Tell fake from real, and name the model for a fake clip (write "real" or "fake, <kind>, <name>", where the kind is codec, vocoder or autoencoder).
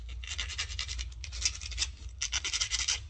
real